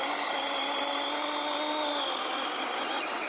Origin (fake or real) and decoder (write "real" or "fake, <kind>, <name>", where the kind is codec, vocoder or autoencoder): real